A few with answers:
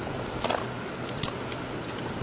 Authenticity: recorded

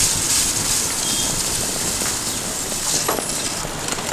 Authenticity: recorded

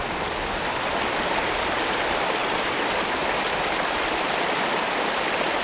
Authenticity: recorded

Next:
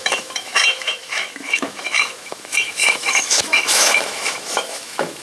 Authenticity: remade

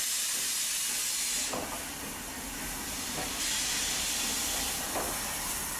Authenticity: recorded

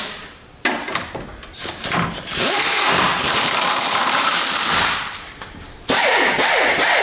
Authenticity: remade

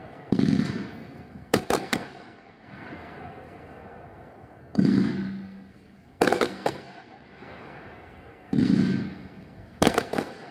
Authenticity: remade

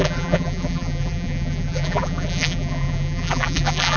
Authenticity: remade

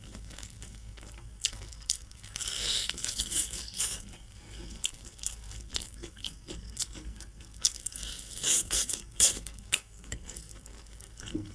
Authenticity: remade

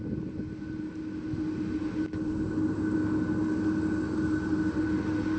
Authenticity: recorded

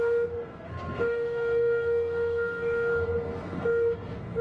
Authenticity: remade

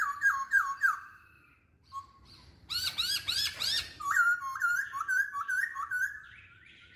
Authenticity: remade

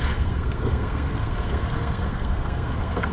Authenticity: remade